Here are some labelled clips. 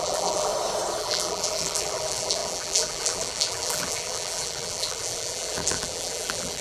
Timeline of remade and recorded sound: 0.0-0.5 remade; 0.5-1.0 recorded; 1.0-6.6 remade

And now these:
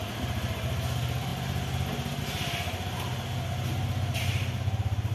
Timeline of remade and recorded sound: 0.0-5.1 recorded

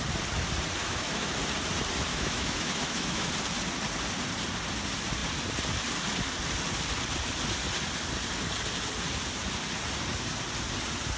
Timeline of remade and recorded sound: 0.0-0.8 recorded; 0.8-1.3 remade; 1.3-2.1 recorded; 2.1-3.3 remade; 3.3-11.2 recorded